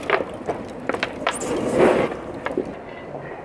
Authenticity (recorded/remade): recorded